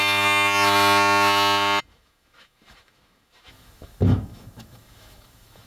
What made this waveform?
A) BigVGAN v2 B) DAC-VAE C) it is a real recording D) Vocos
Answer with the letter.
B